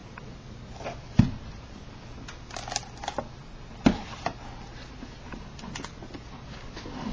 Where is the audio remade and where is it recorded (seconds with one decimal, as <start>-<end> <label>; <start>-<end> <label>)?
0.0-7.1 recorded

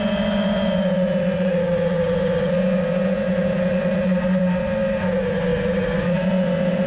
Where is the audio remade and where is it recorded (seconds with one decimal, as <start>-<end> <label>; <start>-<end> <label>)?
0.0-6.9 remade